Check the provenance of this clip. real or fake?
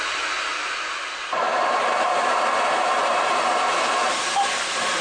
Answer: fake